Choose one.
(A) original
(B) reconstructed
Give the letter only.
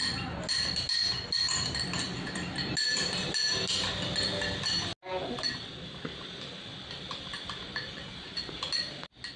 A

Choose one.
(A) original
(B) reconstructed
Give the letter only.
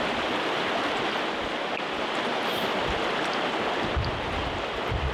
A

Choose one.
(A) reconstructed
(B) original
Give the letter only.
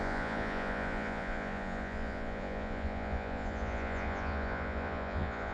A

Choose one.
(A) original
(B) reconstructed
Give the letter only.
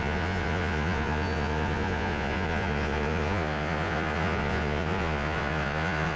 B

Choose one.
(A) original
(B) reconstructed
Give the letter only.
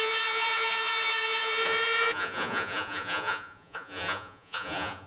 B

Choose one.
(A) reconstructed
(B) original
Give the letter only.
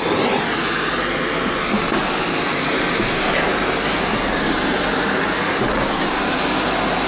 B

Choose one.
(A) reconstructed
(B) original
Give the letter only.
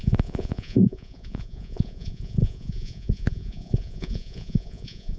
A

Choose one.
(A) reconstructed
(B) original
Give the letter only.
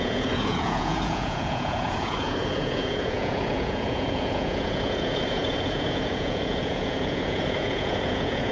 A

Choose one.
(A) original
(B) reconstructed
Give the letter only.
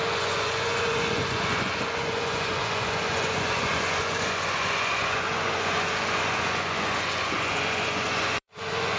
B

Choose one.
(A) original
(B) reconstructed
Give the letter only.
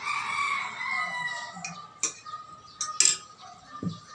A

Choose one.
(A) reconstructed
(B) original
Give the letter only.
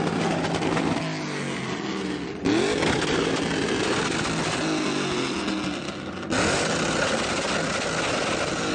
B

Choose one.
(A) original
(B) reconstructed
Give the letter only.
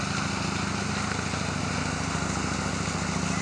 A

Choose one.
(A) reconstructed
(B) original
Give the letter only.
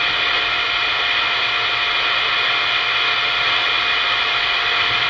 B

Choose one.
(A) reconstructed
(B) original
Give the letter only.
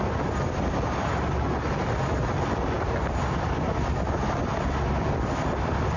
B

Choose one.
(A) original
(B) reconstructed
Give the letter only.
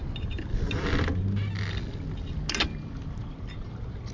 A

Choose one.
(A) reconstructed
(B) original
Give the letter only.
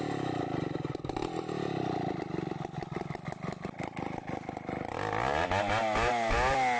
B